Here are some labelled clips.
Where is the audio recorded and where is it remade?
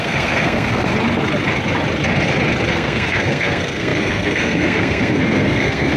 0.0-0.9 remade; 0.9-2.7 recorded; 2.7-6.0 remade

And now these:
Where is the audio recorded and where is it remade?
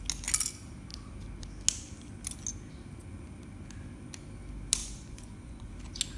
0.0-4.8 recorded; 4.8-5.7 remade; 5.7-6.2 recorded